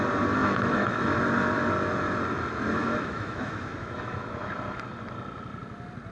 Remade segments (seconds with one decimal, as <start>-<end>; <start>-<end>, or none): 0.4-1.0; 2.8-4.5